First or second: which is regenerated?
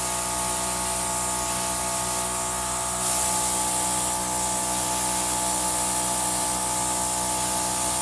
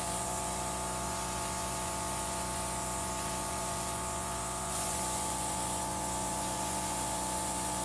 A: second